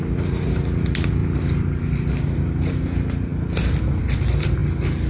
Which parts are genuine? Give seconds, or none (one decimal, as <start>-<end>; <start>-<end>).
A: 0.0-5.1